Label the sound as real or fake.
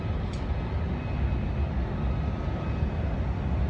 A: real